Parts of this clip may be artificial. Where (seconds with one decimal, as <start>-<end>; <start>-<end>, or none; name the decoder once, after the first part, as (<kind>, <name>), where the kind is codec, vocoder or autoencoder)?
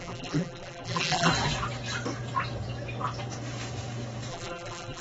0.0-1.3 (vocoder, BigVGAN v2); 4.3-5.0